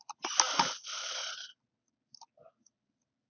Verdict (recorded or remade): recorded